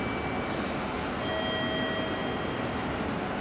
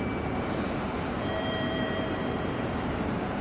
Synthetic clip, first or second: second